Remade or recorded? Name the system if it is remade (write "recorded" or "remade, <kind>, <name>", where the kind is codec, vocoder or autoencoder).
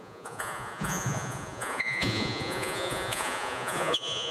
remade, vocoder, Vocos